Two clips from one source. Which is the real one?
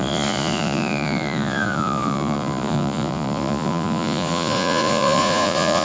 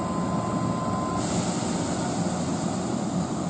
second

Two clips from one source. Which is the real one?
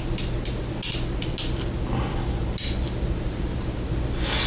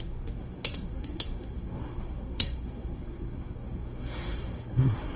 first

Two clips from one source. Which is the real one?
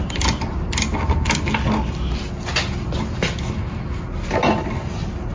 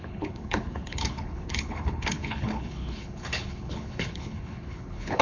first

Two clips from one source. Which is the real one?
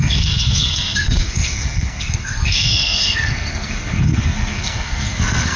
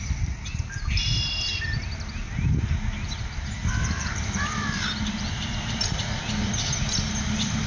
second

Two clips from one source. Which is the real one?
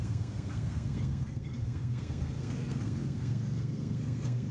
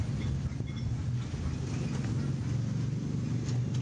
second